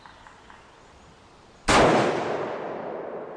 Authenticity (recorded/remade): recorded